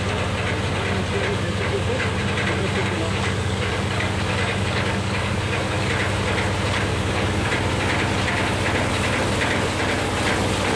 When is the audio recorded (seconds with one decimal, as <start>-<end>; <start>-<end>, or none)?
0.0-1.3; 2.1-2.8; 5.9-6.9; 7.5-10.8